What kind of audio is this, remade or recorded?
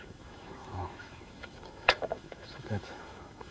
remade